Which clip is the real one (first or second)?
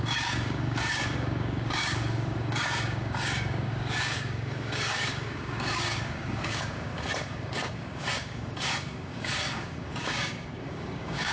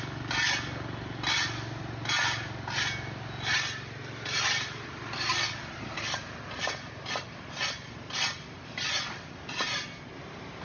second